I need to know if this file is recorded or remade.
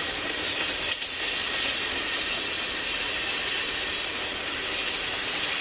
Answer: recorded